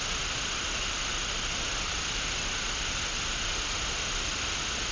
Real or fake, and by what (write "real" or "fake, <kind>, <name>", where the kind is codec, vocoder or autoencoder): real